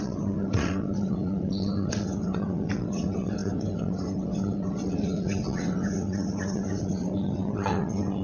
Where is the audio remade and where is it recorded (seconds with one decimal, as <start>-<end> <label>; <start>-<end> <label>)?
0.0-8.2 remade